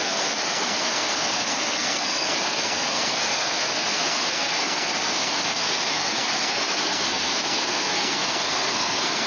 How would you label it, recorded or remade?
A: remade